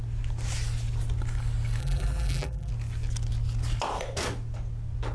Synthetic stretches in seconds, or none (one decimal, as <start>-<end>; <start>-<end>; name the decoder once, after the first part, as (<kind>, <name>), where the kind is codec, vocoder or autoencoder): 1.8-2.7 (vocoder, BigVGAN v2)